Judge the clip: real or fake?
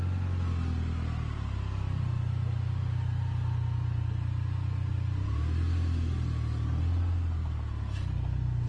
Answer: real